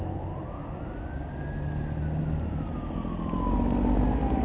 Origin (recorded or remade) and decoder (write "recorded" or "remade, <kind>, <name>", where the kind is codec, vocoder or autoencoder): recorded